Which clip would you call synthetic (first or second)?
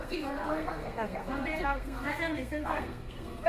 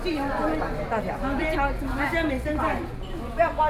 first